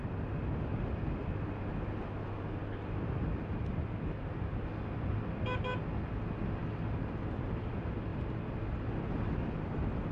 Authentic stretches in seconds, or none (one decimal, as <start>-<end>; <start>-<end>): 0.0-2.6; 4.5-6.6; 8.1-9.1